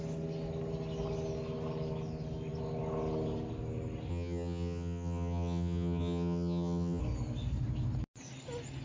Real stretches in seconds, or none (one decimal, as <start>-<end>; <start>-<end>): 0.0-4.1; 7.0-8.8